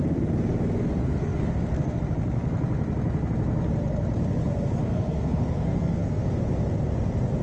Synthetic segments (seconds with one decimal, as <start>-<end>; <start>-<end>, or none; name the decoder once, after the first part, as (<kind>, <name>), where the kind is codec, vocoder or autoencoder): 1.0-2.0 (codec, SNAC); 4.8-6.2